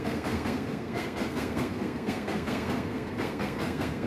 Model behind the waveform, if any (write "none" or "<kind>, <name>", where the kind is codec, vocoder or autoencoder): codec, SNAC